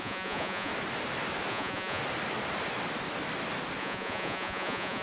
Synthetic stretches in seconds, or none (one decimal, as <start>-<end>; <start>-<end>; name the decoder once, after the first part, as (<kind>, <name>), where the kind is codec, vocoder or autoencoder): 0.0-0.7 (vocoder, Vocos); 1.5-2.0; 3.8-5.0